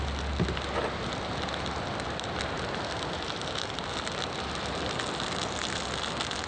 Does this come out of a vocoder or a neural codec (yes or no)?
no